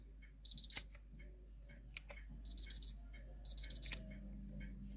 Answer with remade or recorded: recorded